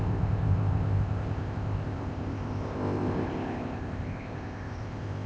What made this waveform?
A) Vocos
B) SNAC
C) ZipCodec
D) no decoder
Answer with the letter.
C